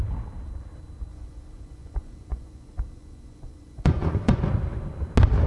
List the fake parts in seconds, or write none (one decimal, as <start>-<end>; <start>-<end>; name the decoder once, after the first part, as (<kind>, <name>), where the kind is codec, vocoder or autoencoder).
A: 1.1-4.4 (vocoder, Vocos)